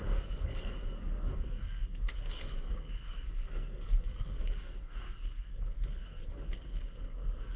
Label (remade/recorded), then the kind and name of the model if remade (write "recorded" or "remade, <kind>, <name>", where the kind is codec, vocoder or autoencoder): remade, codec, SNAC